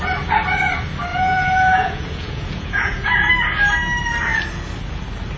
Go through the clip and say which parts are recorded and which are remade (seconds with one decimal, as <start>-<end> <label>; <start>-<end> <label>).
0.0-1.1 recorded; 1.1-3.3 remade; 3.3-5.4 recorded